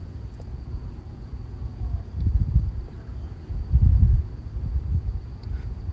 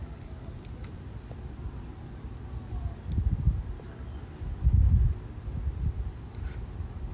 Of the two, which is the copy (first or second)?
first